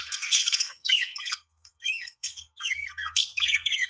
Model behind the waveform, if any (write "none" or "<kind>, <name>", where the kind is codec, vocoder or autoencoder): codec, SNAC